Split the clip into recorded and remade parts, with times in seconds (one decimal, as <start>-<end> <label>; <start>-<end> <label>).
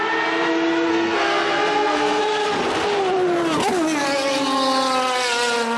0.0-0.9 recorded; 0.9-2.2 remade; 2.2-5.8 recorded